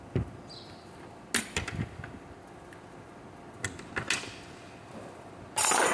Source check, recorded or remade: recorded